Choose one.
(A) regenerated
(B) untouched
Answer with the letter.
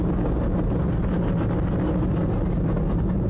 B